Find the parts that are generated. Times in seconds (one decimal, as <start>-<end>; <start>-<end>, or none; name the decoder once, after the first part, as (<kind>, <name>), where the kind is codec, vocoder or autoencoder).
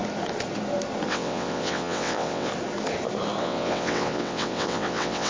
1.1-2.5 (vocoder, WaveNeXt); 3.4-5.3